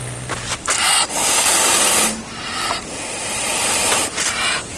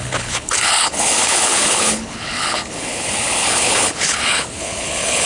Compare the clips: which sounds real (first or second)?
first